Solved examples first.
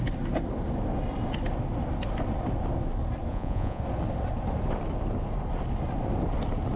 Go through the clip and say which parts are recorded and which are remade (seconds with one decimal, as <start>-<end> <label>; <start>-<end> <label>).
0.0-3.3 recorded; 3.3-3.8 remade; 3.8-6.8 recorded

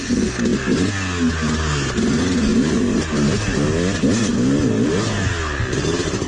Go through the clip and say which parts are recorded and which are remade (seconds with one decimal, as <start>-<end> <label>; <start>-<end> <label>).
0.0-6.3 recorded

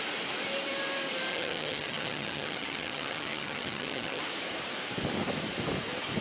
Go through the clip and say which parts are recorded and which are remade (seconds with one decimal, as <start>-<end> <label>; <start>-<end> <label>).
0.0-1.3 recorded; 1.3-4.2 remade; 4.2-6.2 recorded

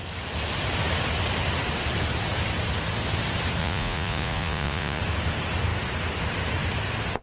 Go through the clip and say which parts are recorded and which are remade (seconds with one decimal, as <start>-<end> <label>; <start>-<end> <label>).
0.0-3.6 recorded; 3.6-5.0 remade; 5.0-7.2 recorded